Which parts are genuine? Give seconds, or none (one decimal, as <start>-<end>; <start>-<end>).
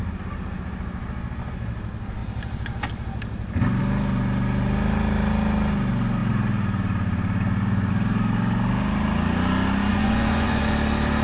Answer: 0.0-9.9; 10.7-11.2